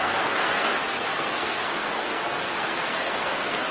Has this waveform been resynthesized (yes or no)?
yes